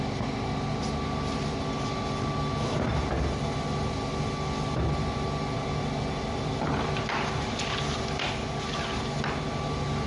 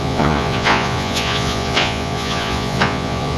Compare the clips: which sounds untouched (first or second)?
first